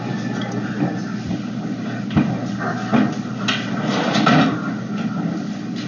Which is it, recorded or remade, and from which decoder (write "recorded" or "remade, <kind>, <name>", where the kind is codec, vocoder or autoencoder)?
recorded